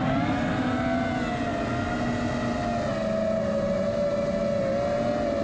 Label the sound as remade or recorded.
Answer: recorded